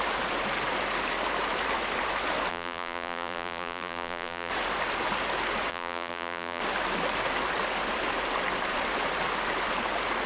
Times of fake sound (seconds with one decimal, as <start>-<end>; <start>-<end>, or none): 2.5-4.5; 5.7-6.6